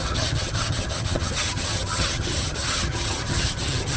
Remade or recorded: remade